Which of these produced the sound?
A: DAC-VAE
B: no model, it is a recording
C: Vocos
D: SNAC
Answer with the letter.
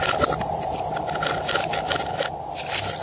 B